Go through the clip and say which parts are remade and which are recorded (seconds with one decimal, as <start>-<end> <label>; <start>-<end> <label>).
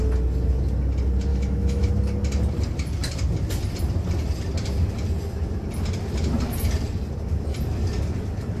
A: 0.0-1.3 recorded; 1.3-1.9 remade; 1.9-8.6 recorded